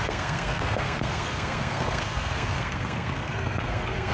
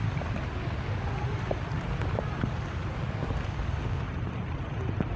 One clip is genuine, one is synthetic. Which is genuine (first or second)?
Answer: second